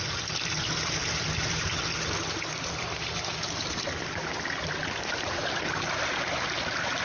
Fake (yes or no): no